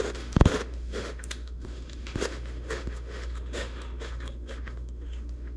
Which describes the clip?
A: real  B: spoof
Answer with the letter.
B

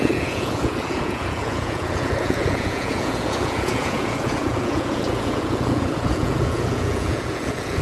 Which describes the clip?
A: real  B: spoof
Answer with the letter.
B